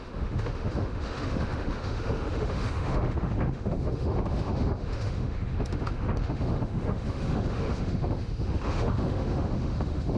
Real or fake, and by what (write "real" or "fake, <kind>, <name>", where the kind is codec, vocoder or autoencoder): fake, autoencoder, DAC-VAE